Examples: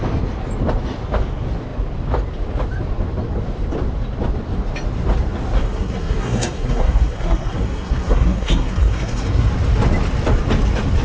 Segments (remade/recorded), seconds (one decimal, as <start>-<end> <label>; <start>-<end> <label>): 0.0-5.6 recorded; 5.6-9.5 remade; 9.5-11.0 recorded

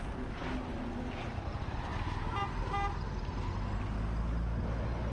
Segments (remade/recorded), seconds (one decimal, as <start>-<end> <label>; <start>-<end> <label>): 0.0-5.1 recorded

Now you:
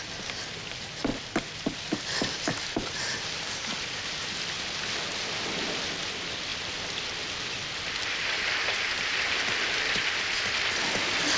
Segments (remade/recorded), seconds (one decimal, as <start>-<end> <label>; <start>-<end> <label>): 0.0-11.4 recorded

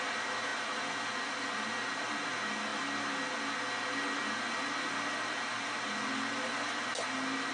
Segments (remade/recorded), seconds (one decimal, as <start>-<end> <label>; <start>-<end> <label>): 0.0-7.5 recorded

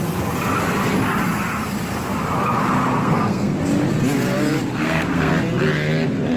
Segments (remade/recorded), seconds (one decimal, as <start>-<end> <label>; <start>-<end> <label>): 0.0-3.0 recorded; 3.0-3.6 remade; 3.6-4.7 recorded; 4.7-5.3 remade; 5.3-6.4 recorded

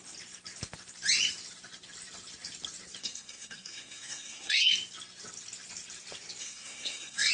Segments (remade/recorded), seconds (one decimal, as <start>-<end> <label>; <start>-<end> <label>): 0.0-3.0 recorded; 3.0-4.7 remade; 4.7-6.4 recorded; 6.4-7.3 remade

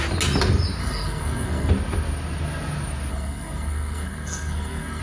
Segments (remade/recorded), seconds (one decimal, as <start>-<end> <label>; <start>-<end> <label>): 0.0-0.8 recorded; 0.8-1.7 remade; 1.7-3.1 recorded; 3.1-5.0 remade